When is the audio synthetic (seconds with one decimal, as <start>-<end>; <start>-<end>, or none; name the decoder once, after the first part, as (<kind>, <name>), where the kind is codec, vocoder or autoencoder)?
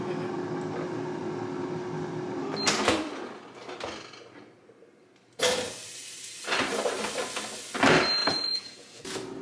8.2-9.0 (vocoder, Vocos)